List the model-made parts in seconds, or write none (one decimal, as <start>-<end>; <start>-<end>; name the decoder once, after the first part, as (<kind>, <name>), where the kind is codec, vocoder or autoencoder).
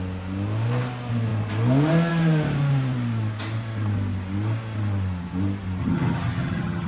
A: 5.8-6.9 (vocoder, HiFi-GAN)